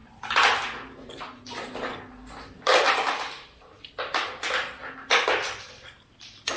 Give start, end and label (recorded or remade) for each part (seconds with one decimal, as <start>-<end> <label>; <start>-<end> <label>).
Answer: 0.0-6.6 recorded